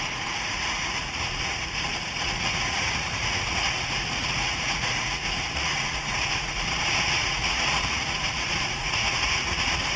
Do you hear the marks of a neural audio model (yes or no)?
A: yes